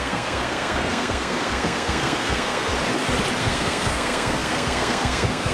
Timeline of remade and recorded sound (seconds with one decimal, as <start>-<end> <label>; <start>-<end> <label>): 0.0-2.7 remade; 2.7-3.4 recorded; 3.4-5.5 remade